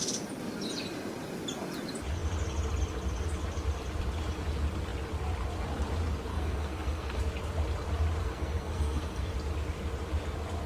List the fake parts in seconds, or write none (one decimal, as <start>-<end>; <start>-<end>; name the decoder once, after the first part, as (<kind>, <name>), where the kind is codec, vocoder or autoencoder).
6.3-7.2 (codec, SNAC); 8.2-9.3